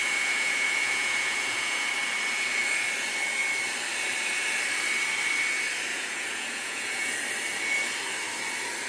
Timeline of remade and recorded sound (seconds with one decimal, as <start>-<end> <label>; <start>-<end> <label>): 0.0-1.9 remade; 1.9-5.9 recorded; 5.9-7.1 remade; 7.1-8.9 recorded